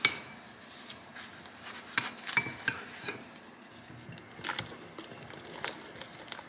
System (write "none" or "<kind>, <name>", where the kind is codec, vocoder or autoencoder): none